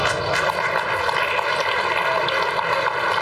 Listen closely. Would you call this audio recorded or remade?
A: recorded